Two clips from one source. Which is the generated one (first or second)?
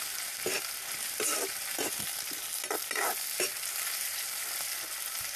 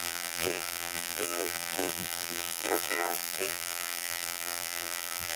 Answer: second